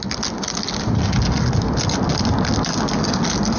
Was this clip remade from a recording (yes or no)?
no